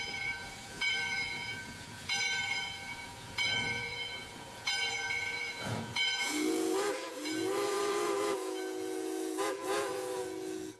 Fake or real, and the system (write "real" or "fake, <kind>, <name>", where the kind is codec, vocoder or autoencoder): fake, vocoder, Vocos